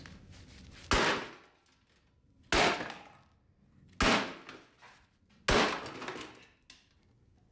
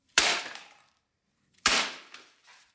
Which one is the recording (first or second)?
first